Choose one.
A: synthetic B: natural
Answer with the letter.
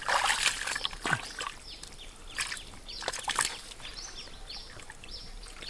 B